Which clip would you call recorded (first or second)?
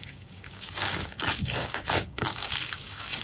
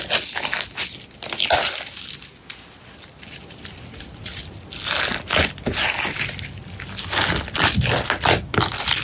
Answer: second